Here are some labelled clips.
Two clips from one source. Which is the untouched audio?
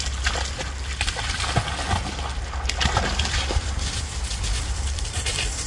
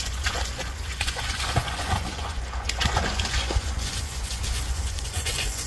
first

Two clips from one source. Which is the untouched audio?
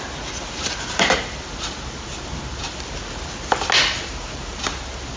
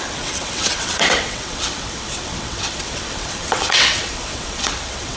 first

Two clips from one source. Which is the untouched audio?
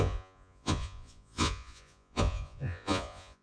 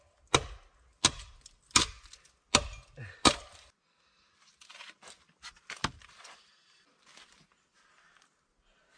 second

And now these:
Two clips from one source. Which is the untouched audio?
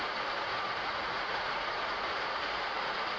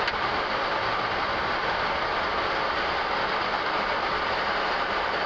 second